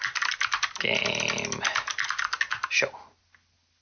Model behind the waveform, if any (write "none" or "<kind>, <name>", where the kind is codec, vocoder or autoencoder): none